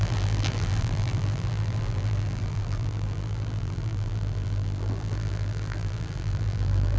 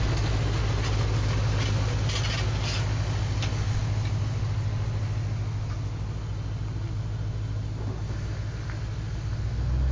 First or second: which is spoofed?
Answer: first